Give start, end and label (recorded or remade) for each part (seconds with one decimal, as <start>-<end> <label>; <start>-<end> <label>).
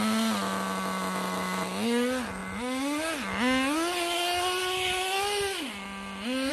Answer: 0.0-6.5 recorded